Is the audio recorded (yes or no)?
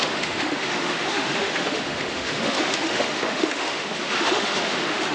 no